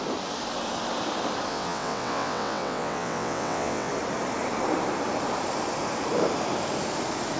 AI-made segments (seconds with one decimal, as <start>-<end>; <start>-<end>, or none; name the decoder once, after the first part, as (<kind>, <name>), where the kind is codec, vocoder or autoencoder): 1.5-3.9 (vocoder, WaveNeXt)